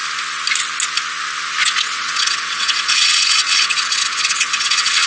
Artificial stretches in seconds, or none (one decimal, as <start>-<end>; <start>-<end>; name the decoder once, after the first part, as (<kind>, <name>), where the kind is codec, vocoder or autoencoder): 1.6-5.1 (vocoder, WaveNeXt)